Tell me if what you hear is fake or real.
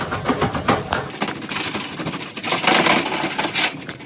real